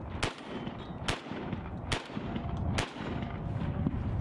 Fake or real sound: real